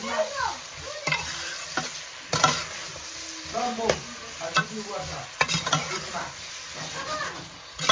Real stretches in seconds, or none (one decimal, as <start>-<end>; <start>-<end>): 0.0-7.9